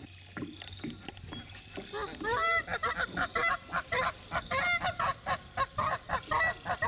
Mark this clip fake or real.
real